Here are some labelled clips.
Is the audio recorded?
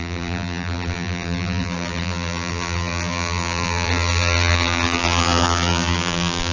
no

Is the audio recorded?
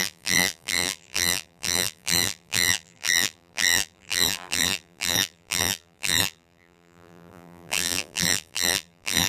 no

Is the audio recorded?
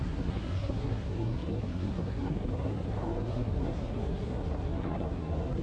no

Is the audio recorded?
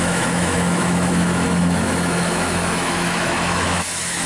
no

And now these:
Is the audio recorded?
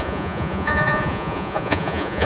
no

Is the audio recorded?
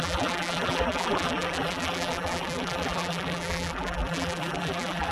no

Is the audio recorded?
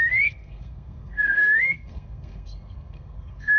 no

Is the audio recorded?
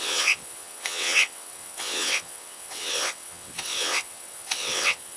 no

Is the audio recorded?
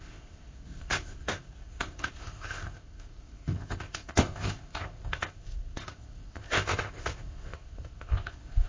no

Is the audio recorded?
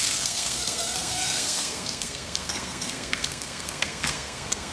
no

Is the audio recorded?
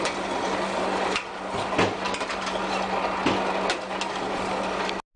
yes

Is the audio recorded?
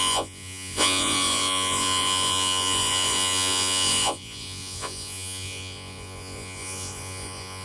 no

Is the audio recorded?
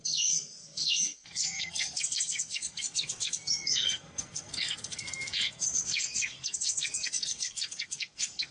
no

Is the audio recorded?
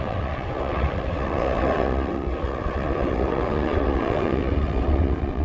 no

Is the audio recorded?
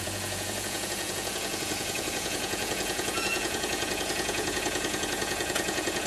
no